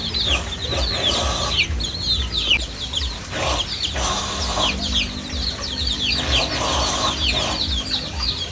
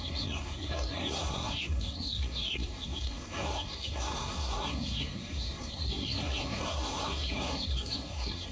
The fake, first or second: second